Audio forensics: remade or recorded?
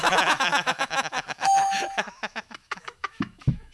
remade